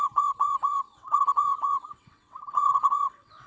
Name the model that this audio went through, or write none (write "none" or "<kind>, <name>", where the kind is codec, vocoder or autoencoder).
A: vocoder, WaveNeXt